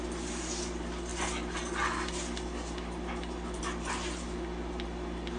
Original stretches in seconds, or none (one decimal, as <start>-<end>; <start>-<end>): 0.0-5.4

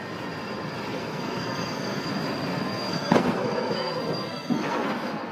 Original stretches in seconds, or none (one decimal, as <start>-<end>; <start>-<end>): 0.0-0.9; 2.1-2.5

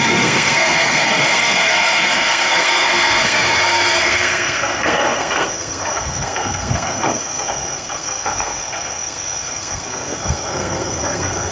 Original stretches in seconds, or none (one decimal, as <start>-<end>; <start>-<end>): none

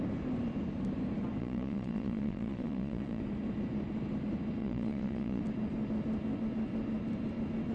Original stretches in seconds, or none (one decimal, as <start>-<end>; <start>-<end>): 0.0-1.4; 3.2-4.6; 5.4-7.7

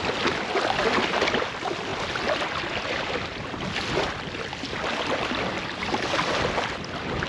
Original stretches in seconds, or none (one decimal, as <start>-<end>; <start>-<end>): 0.0-7.3

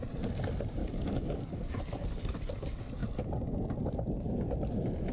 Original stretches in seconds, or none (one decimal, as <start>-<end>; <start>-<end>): 0.0-0.8; 1.8-5.1